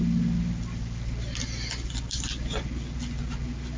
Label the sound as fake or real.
real